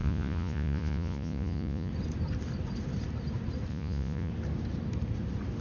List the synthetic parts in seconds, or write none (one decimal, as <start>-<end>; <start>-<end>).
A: 0.0-1.9; 3.7-4.3